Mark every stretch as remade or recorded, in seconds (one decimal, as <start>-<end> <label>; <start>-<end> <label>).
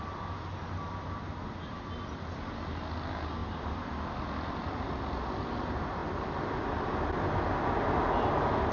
0.0-3.4 recorded; 3.4-4.9 remade; 4.9-8.7 recorded